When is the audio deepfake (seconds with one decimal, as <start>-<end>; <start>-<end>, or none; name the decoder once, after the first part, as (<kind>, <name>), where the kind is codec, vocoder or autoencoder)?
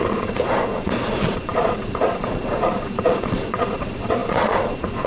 0.0-5.1 (vocoder, Vocos)